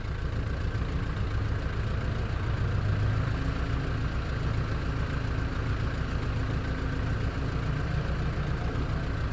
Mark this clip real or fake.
real